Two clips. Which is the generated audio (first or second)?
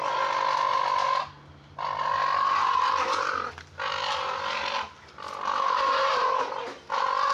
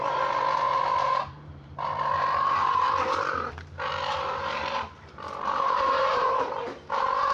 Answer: second